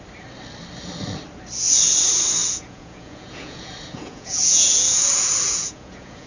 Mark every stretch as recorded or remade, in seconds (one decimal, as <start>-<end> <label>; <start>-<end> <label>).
0.0-2.4 recorded; 2.4-6.3 remade